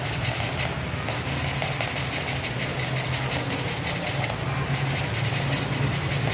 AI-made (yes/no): no